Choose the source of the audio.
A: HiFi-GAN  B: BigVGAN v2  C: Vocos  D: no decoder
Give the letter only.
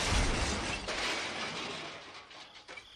D